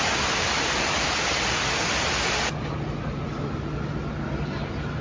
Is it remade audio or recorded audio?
recorded